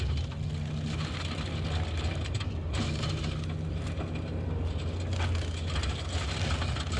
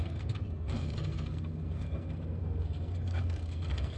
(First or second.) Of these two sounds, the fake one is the second